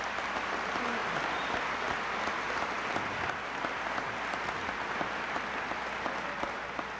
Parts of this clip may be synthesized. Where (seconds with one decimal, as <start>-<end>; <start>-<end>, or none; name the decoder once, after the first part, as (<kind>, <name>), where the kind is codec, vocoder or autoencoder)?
none